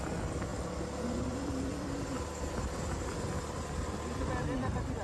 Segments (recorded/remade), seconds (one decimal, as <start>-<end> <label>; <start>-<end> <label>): 0.0-5.0 recorded